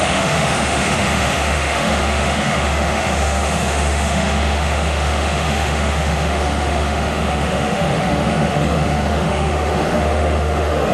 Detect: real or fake fake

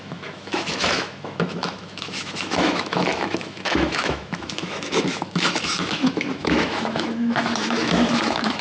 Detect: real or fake fake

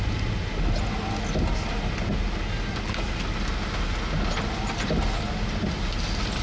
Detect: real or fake real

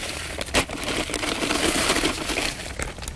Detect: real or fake real